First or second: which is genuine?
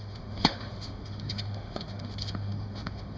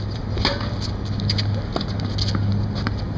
second